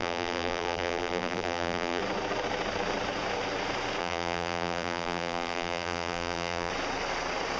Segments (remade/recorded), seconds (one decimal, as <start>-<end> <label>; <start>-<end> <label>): 0.0-2.0 remade; 2.0-4.0 recorded; 4.0-6.7 remade; 6.7-7.6 recorded

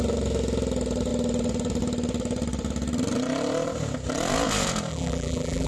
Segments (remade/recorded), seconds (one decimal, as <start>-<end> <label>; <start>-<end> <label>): 0.0-4.9 recorded; 4.9-5.7 remade

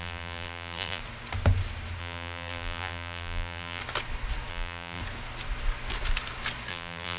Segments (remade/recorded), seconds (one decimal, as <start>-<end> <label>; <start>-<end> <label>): 0.0-1.0 remade; 1.0-2.0 recorded; 2.0-3.8 remade; 3.8-4.5 recorded; 4.5-5.0 remade; 5.0-6.7 recorded; 6.7-7.2 remade

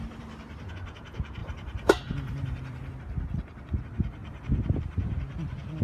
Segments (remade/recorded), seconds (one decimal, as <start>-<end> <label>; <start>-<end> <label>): 0.0-0.7 remade; 0.7-1.4 recorded; 1.4-2.9 remade; 2.9-5.8 recorded

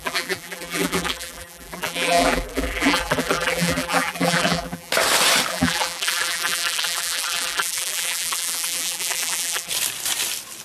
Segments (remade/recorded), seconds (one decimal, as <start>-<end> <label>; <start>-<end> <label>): 0.0-4.9 remade; 4.9-5.5 recorded; 5.5-9.7 remade; 9.7-10.6 recorded

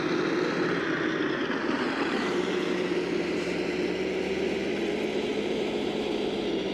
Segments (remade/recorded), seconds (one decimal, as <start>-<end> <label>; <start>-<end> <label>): 0.0-1.4 recorded; 1.4-3.9 remade; 3.9-5.3 recorded; 5.3-6.7 remade

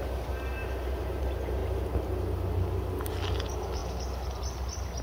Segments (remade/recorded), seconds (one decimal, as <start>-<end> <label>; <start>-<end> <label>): 0.0-5.0 recorded